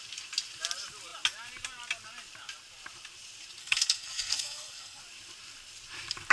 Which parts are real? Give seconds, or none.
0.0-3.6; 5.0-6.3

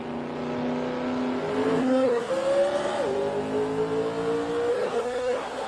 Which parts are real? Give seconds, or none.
0.0-1.8; 2.3-4.7